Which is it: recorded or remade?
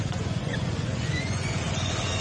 remade